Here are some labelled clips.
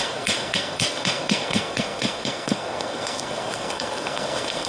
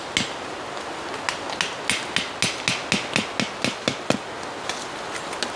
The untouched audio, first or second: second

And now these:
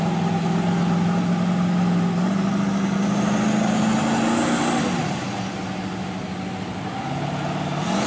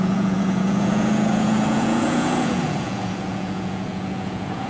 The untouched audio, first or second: first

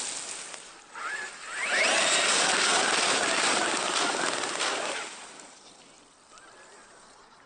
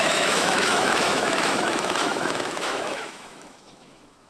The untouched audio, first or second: first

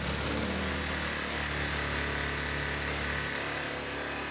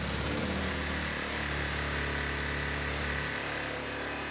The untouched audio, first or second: first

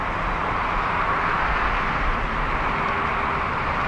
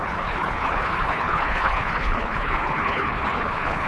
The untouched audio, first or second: first